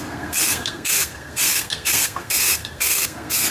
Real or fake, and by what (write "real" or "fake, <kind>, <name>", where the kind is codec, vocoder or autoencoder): fake, codec, SNAC